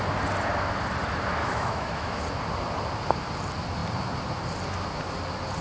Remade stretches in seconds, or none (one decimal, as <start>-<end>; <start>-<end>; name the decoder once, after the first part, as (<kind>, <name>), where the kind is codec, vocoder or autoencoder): 1.4-2.2 (autoencoder, DAC-VAE)